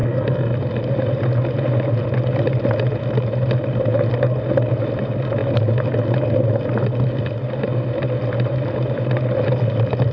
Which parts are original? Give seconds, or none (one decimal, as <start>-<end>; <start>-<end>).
0.0-10.1